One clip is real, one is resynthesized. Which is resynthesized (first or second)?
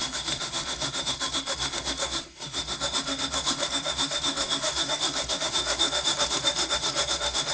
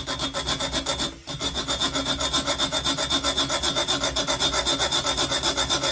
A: first